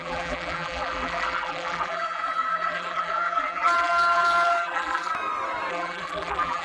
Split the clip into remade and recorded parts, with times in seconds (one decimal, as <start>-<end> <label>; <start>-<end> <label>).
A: 0.0-5.1 remade; 5.1-5.7 recorded; 5.7-6.6 remade